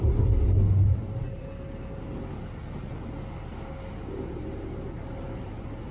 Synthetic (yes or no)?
no